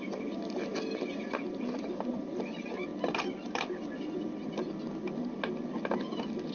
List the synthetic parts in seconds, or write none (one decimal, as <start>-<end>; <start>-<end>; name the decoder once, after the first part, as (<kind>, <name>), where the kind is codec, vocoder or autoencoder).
none